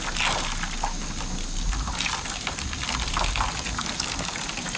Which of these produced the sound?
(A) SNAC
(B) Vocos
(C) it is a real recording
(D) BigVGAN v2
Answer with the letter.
C